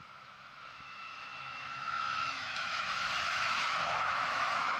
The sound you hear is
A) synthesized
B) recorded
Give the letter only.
A